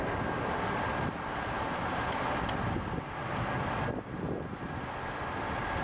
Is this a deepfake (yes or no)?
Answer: no